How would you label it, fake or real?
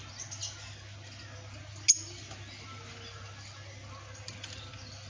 real